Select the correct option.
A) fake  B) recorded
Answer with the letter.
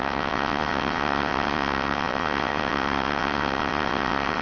A